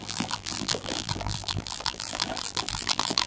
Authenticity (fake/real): fake